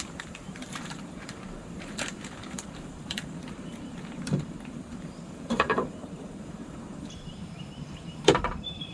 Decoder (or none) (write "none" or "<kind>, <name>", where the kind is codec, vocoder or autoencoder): vocoder, BigVGAN v2